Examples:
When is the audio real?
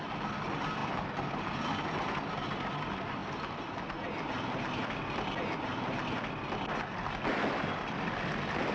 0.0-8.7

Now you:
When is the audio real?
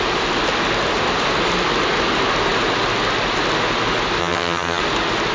0.0-4.2; 4.8-5.3